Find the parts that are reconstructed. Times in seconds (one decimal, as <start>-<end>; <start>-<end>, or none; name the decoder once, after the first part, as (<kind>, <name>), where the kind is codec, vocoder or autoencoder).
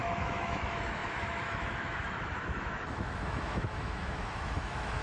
0.0-5.0 (autoencoder, DAC-VAE)